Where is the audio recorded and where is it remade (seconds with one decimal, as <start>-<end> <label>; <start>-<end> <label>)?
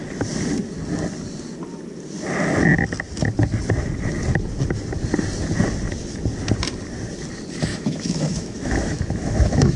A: 0.0-7.7 recorded; 7.7-9.8 remade